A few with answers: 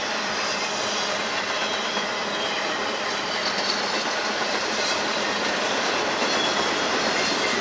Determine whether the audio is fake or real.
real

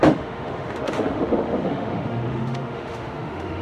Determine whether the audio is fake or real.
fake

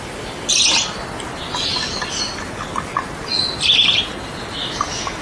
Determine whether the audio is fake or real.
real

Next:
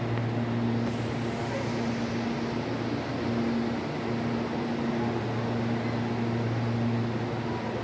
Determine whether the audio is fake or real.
real